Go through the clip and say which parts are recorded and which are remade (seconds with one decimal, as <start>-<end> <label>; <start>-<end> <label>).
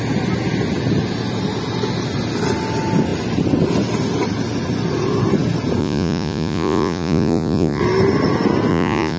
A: 0.0-5.8 recorded; 5.8-7.8 remade; 7.8-8.7 recorded; 8.7-9.2 remade